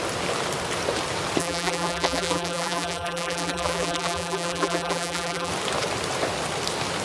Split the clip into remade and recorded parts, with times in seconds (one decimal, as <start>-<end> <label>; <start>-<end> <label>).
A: 0.0-1.4 recorded; 1.4-5.5 remade; 5.5-7.0 recorded